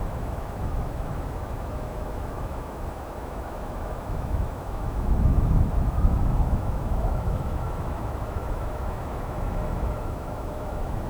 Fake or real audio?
fake